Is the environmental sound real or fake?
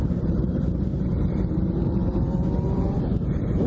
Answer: fake